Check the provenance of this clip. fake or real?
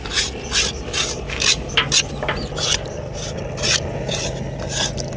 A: real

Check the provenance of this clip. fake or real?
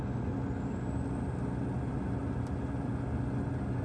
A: real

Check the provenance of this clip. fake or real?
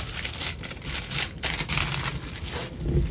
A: real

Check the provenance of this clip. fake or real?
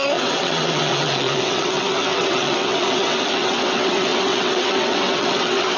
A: fake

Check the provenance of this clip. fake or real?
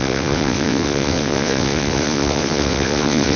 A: fake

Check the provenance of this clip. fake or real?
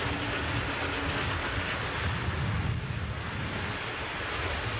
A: real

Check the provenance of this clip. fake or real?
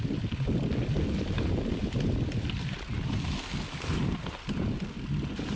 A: real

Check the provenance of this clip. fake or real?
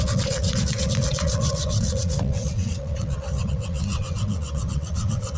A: fake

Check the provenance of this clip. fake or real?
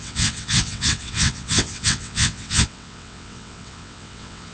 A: fake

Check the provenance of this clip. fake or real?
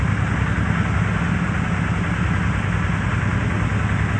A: real